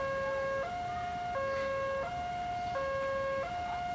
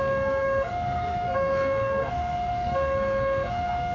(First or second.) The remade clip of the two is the second